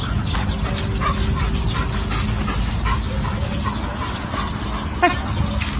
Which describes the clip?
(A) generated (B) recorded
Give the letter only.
B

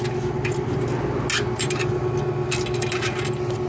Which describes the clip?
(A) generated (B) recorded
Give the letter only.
B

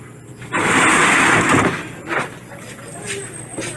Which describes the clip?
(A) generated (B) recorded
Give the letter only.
B